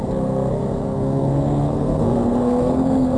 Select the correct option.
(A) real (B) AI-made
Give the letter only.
B